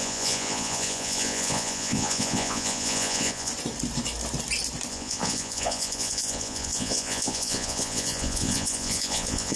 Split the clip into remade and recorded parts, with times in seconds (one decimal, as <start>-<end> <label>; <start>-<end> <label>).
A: 0.0-3.5 remade; 3.5-4.9 recorded; 4.9-9.6 remade